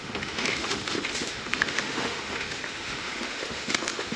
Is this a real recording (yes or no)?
no